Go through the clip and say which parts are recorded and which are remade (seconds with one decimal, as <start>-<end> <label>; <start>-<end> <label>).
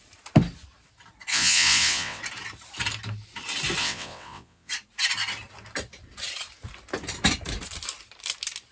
0.0-1.3 recorded; 1.3-2.2 remade; 2.2-3.8 recorded; 3.8-4.7 remade; 4.7-8.7 recorded